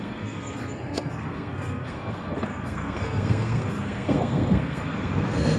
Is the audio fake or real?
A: fake